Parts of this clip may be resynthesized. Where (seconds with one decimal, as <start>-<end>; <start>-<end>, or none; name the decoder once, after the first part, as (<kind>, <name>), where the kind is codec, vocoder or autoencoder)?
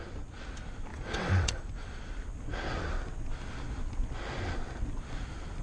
0.9-2.1 (vocoder, WaveNeXt)